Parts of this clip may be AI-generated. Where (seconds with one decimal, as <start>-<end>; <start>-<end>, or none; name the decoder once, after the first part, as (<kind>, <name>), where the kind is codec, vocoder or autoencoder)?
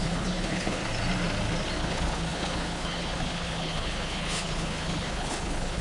0.0-0.8 (codec, HILCodec); 1.8-5.8